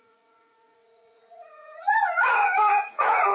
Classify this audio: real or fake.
fake